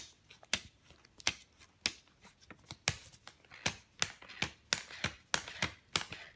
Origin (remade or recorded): recorded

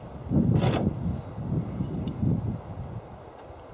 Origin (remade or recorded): recorded